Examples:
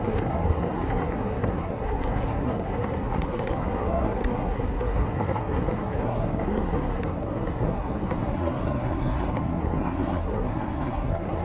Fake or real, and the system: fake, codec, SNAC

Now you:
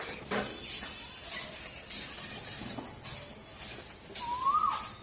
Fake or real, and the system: real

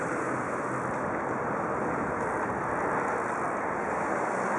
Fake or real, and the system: real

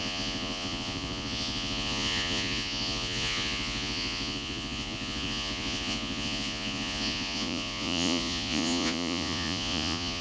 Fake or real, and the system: fake, vocoder, Vocos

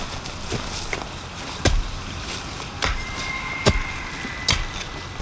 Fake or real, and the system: real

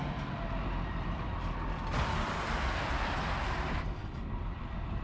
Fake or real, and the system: fake, vocoder, BigVGAN v2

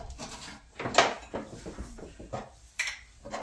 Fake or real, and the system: real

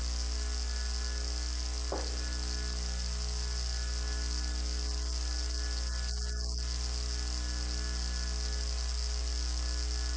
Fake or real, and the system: real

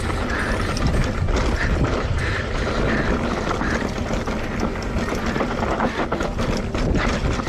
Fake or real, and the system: real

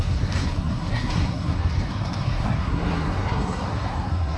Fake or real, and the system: fake, codec, SNAC